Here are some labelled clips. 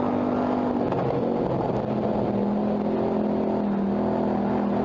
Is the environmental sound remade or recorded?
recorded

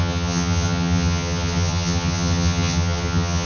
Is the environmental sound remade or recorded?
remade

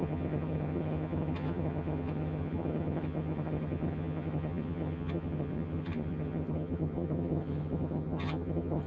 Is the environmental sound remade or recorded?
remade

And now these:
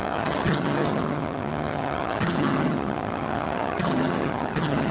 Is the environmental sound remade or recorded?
remade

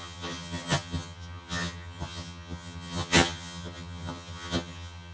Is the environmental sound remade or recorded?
remade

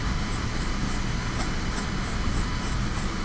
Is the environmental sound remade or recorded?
recorded